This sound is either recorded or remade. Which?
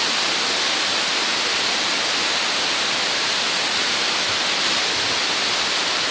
recorded